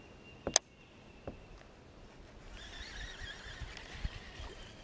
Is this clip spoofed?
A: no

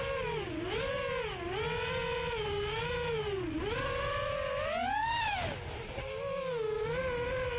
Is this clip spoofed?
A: no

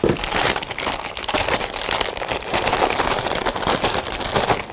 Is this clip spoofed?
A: no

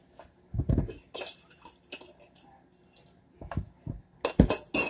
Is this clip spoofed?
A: no